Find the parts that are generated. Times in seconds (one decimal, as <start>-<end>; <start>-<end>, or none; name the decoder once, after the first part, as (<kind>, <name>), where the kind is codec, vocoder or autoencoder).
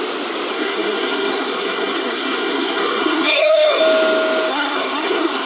0.5-3.8 (codec, SNAC); 4.5-5.5